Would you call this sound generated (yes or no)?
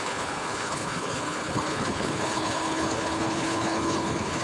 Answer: yes